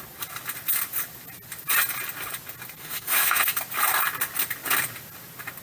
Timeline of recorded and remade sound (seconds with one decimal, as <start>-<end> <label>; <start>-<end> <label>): 0.0-2.8 recorded; 2.8-3.6 remade; 3.6-5.6 recorded